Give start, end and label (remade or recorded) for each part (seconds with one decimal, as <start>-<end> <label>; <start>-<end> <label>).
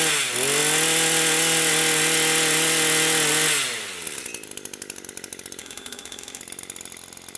0.0-5.6 recorded; 5.6-6.4 remade; 6.4-7.4 recorded